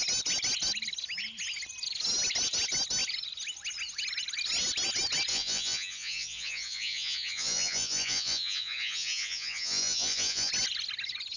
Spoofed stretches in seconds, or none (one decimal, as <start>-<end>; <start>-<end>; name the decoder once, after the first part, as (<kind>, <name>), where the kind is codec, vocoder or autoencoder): 5.3-10.5 (vocoder, Vocos)